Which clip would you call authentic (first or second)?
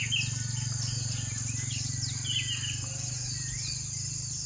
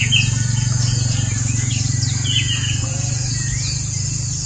first